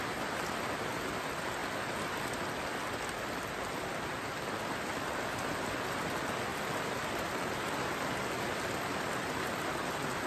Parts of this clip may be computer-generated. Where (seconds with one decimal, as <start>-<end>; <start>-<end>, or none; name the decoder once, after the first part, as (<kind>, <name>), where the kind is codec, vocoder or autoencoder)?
none